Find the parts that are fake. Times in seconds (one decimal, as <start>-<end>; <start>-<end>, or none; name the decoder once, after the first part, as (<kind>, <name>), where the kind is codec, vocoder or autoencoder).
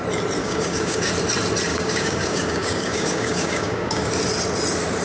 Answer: 0.4-1.1 (codec, DAC); 1.7-4.1